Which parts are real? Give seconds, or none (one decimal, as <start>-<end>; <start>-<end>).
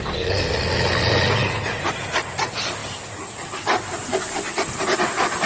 0.0-2.8; 3.6-5.5